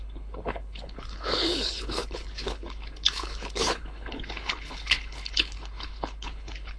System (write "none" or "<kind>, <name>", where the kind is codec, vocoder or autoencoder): codec, HILCodec